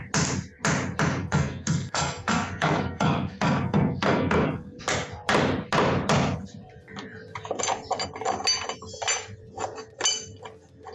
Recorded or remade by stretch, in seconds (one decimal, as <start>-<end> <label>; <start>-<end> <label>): 0.0-1.2 recorded; 1.2-4.8 remade; 4.8-10.9 recorded